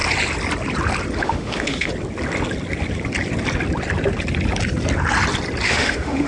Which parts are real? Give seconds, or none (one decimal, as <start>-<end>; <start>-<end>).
0.0-1.2; 1.9-5.7